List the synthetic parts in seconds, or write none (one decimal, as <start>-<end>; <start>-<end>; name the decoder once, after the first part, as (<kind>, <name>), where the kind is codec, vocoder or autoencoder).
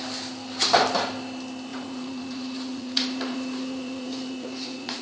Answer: 1.7-5.0 (vocoder, Vocos)